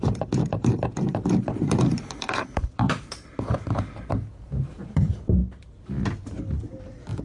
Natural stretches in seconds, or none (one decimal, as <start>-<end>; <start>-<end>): 5.4-6.8